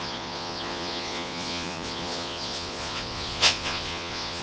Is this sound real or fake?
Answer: fake